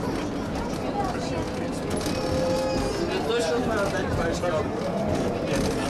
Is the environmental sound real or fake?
real